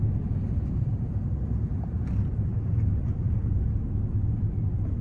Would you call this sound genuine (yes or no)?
no